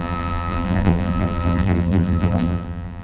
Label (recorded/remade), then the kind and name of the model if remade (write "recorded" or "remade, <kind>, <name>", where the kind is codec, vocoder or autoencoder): remade, vocoder, BigVGAN v2